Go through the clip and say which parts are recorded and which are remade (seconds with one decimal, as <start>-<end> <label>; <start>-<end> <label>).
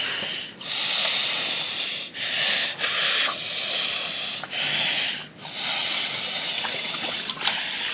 0.0-5.7 recorded; 5.7-7.3 remade; 7.3-7.9 recorded